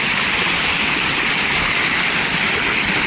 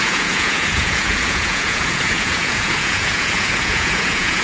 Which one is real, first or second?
first